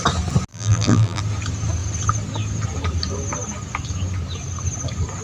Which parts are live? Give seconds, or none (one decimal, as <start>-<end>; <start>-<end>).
0.0-0.5; 1.2-5.2